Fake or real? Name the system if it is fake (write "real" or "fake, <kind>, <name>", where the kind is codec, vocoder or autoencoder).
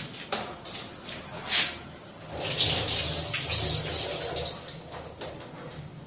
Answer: real